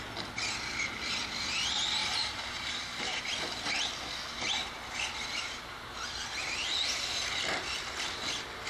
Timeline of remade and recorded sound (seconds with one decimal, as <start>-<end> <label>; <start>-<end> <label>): 0.0-2.0 recorded; 2.0-3.2 remade; 3.2-8.7 recorded